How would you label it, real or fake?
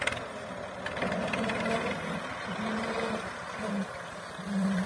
real